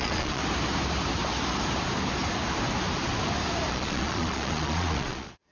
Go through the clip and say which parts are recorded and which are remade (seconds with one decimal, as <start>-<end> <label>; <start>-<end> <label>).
0.0-0.4 remade; 0.4-3.7 recorded; 3.7-5.5 remade